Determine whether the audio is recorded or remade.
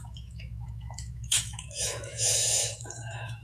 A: remade